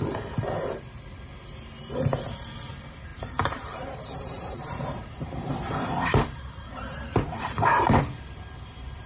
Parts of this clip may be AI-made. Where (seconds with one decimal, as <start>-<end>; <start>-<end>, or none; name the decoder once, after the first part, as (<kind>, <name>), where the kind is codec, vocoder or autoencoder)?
3.1-8.0 (vocoder, BigVGAN v2)